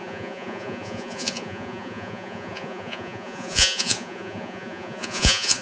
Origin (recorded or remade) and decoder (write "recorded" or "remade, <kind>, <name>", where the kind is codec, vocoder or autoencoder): remade, vocoder, Vocos